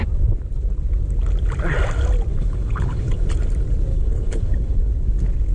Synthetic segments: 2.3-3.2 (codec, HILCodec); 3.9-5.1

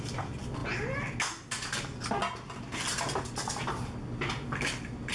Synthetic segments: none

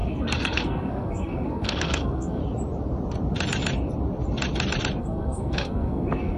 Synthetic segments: 0.0-2.4 (codec, SNAC); 5.0-6.4

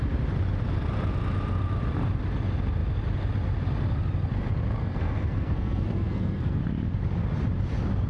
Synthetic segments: 4.8-6.6 (codec, SNAC)